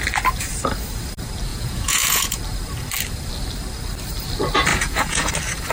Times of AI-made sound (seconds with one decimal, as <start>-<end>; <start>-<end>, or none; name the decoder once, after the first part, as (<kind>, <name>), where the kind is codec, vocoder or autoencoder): 1.5-2.4 (vocoder, Vocos); 4.7-5.3